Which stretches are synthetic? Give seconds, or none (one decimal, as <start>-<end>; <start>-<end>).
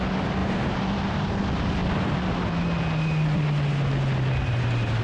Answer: 0.4-1.4